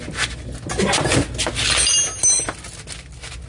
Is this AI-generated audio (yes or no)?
no